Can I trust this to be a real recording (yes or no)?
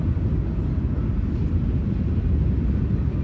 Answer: yes